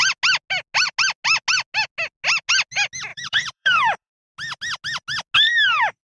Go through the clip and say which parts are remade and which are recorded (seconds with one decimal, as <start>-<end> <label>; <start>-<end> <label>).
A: 0.0-3.1 recorded; 3.1-4.1 remade; 4.1-6.1 recorded